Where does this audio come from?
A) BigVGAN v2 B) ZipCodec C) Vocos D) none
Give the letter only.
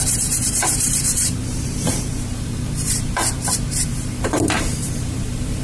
A